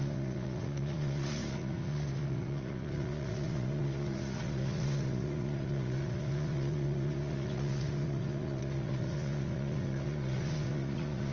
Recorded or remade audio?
remade